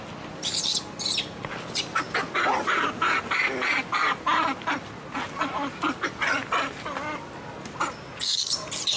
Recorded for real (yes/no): yes